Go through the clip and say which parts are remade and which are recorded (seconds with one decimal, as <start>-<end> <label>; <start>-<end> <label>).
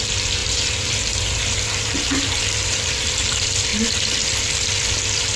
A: 0.0-3.7 remade; 3.7-5.4 recorded